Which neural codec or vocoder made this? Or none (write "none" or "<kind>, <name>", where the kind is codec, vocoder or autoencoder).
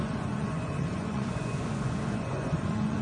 vocoder, Vocos